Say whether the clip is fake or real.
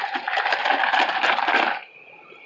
fake